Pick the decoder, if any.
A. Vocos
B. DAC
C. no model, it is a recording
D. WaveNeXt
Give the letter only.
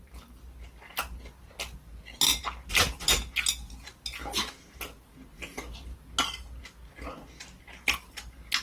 C